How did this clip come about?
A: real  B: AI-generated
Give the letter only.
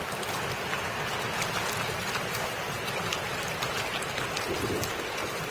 A